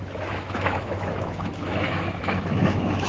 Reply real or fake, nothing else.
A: fake